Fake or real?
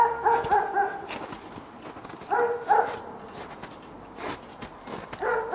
real